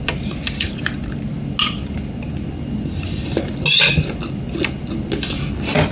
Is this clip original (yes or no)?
yes